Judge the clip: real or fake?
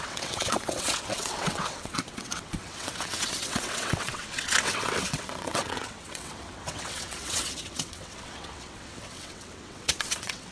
fake